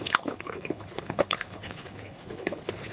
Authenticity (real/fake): fake